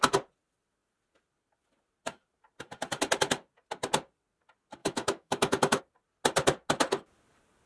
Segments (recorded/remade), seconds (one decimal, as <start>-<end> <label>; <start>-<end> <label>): 0.0-4.8 recorded; 4.8-5.8 remade; 5.8-7.7 recorded